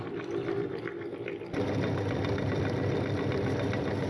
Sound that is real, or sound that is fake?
real